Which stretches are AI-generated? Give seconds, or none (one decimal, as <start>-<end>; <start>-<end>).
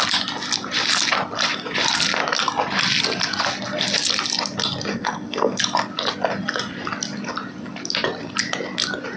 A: 4.9-5.6